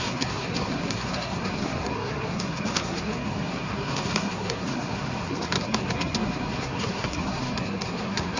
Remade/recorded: remade